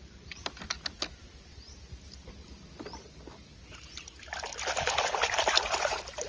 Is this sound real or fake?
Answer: real